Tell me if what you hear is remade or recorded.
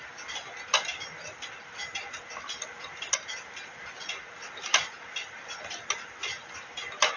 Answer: recorded